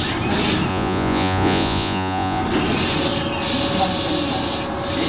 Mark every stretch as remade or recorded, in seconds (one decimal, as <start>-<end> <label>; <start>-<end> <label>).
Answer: 0.0-0.7 recorded; 0.7-2.4 remade; 2.4-5.1 recorded